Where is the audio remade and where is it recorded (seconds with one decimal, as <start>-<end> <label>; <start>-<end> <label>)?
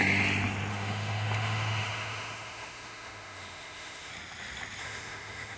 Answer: 0.0-0.7 recorded; 0.7-4.1 remade; 4.1-4.8 recorded; 4.8-5.6 remade